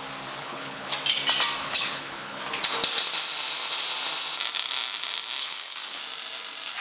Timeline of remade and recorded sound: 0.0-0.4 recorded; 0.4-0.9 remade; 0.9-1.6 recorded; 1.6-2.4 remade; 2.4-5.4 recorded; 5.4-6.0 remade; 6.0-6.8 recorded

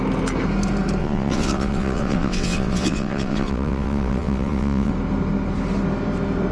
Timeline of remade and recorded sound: 0.0-1.0 recorded; 1.0-4.9 remade; 4.9-6.5 recorded

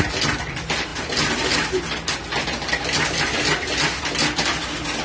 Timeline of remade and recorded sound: 0.0-5.0 recorded

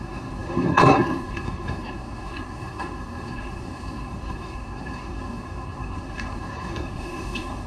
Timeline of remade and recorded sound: 0.0-7.7 remade

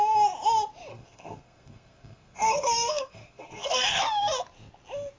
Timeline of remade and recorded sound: 0.0-0.9 recorded; 0.9-4.0 remade; 4.0-5.2 recorded

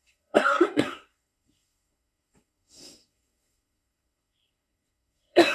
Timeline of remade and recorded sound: 0.0-5.5 remade

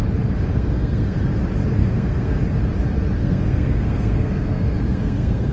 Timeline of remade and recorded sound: 0.0-0.5 recorded; 0.5-1.2 remade; 1.2-1.8 recorded; 1.8-2.4 remade; 2.4-3.2 recorded; 3.2-5.5 remade

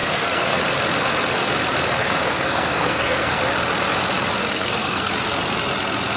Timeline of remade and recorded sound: 0.0-0.6 remade; 0.6-2.0 recorded; 2.0-3.4 remade; 3.4-4.5 recorded; 4.5-5.1 remade; 5.1-6.2 recorded